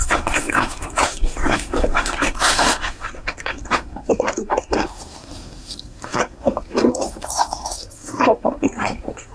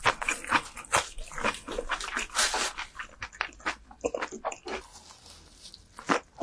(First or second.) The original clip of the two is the second